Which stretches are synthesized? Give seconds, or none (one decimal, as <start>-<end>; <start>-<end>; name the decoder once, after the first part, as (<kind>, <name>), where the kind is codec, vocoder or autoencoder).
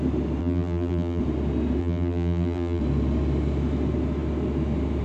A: 0.4-1.2 (vocoder, BigVGAN v2); 1.8-2.8